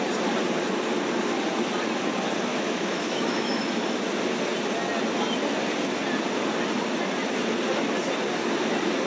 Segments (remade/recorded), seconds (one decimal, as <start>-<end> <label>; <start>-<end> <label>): 0.0-2.5 recorded; 2.5-3.6 remade; 3.6-9.1 recorded